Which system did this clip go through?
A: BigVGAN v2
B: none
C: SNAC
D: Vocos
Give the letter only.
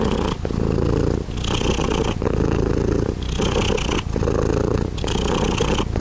B